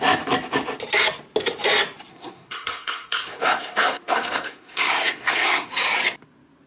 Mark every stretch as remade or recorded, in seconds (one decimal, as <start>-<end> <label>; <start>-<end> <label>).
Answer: 0.0-2.1 recorded; 2.1-5.7 remade; 5.7-6.7 recorded

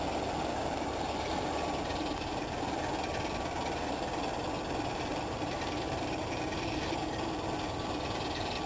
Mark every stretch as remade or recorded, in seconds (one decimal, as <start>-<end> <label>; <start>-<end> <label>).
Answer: 0.0-5.1 recorded; 5.1-6.2 remade; 6.2-8.7 recorded

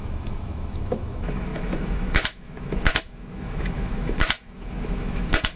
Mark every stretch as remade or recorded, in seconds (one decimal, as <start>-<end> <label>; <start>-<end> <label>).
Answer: 0.0-5.6 remade